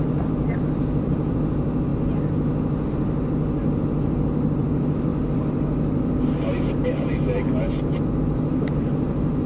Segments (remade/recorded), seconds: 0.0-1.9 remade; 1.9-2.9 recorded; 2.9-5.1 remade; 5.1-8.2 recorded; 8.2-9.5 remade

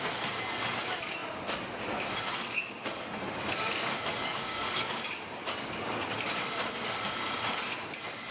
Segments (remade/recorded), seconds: 0.0-2.4 recorded; 2.4-6.2 remade; 6.2-8.3 recorded

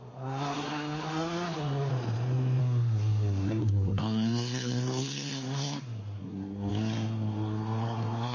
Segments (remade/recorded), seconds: 0.0-1.9 remade; 1.9-2.6 recorded; 2.6-8.3 remade

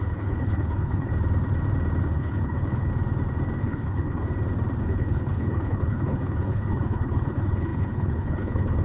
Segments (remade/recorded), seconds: 0.0-1.1 remade; 1.1-2.0 recorded; 2.0-2.9 remade; 2.9-3.6 recorded; 3.6-4.3 remade; 4.3-4.8 recorded; 4.8-8.8 remade

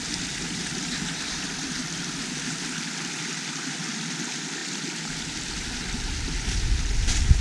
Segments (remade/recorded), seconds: 0.0-4.6 recorded; 4.6-6.7 remade; 6.7-7.4 recorded